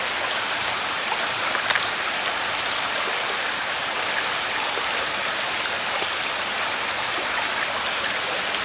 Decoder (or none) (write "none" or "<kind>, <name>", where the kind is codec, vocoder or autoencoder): none